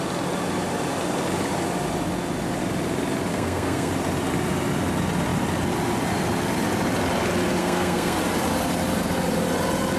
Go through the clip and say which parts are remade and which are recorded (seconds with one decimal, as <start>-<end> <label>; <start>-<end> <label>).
0.0-3.3 recorded; 3.3-3.9 remade; 3.9-7.6 recorded; 7.6-8.2 remade; 8.2-10.0 recorded